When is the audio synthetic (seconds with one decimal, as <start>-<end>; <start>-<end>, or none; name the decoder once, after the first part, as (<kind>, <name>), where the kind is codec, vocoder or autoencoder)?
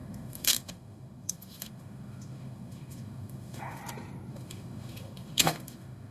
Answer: 0.0-3.8 (autoencoder, DAC-VAE); 4.3-6.1